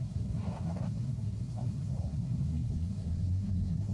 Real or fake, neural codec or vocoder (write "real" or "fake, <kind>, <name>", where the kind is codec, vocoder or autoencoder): fake, codec, SNAC